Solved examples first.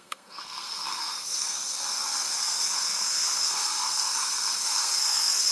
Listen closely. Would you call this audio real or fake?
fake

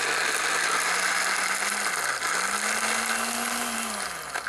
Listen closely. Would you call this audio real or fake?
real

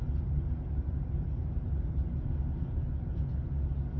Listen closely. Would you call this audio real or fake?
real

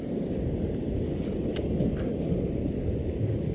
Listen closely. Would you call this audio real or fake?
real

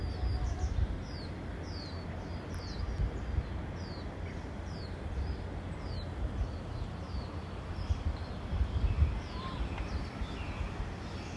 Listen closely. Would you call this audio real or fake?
real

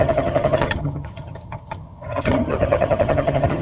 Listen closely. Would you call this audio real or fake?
fake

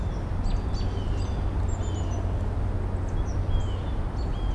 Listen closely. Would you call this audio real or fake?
real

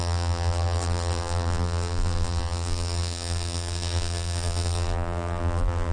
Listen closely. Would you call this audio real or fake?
fake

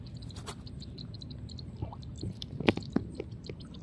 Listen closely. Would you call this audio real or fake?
real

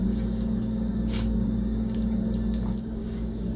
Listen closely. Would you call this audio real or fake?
fake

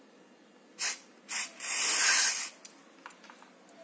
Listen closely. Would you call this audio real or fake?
real